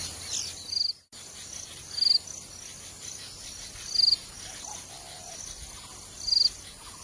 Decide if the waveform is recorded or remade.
recorded